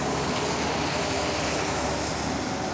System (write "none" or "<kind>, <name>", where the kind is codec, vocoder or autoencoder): none